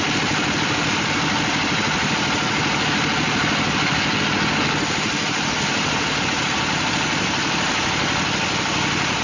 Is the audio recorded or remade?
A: recorded